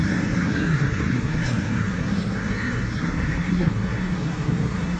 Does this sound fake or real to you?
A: fake